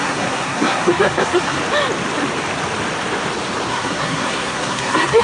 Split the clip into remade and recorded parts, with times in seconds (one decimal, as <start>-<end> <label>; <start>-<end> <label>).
0.0-1.6 remade; 1.6-3.7 recorded; 3.7-5.2 remade